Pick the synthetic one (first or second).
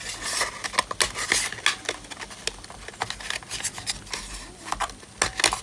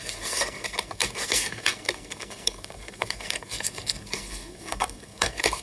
second